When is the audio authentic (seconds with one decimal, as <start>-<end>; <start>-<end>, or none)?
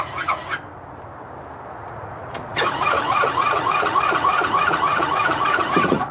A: 0.4-1.7